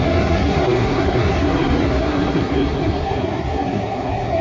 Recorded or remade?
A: remade